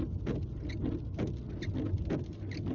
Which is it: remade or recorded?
recorded